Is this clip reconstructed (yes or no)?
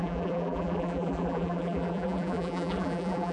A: yes